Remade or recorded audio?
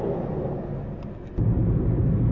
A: recorded